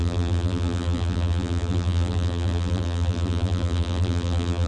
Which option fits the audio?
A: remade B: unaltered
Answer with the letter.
A